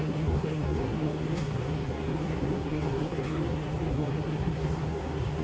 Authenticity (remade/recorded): remade